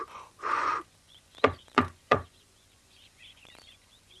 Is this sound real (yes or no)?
no